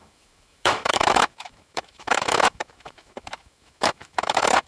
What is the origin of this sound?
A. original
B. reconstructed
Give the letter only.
B